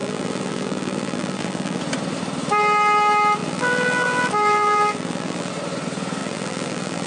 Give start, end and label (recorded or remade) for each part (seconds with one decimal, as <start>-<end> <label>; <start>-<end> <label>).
0.0-1.8 remade; 1.8-3.4 recorded; 3.4-5.5 remade; 5.5-6.2 recorded; 6.2-7.1 remade